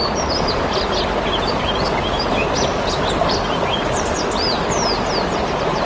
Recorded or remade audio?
recorded